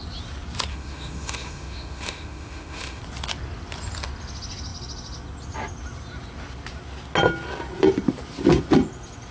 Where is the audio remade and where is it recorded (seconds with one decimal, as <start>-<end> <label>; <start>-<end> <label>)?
0.0-0.7 recorded; 0.7-3.0 remade; 3.0-9.3 recorded